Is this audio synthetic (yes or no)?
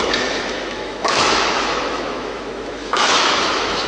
yes